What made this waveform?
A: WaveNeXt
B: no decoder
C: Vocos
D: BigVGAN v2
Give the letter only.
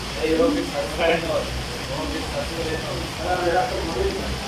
D